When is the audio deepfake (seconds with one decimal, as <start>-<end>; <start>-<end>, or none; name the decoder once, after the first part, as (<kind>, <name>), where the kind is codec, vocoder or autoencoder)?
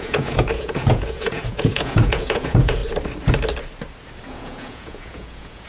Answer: 0.0-2.8 (vocoder, Vocos); 4.2-5.7